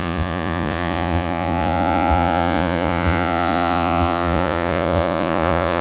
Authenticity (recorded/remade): remade